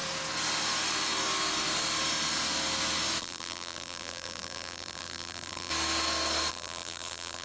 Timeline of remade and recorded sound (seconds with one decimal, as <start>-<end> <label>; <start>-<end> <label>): 0.0-3.2 recorded; 3.2-5.7 remade; 5.7-6.5 recorded; 6.5-7.4 remade